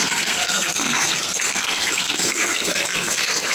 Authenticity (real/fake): fake